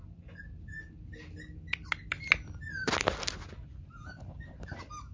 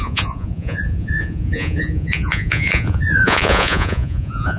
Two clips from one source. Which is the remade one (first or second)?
second